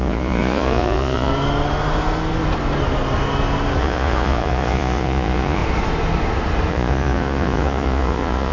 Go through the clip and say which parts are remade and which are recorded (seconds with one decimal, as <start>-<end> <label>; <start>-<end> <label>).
0.0-1.3 remade; 1.3-3.8 recorded; 3.8-5.6 remade; 5.6-6.7 recorded; 6.7-8.5 remade